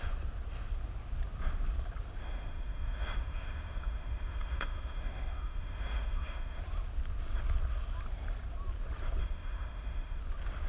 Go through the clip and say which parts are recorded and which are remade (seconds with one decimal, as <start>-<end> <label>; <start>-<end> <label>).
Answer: 0.0-2.2 recorded; 2.2-6.6 remade; 6.6-9.2 recorded; 9.2-10.2 remade; 10.2-10.7 recorded